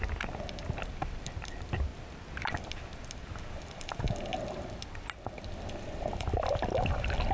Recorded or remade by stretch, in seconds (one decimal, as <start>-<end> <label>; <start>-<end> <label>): 0.0-7.3 recorded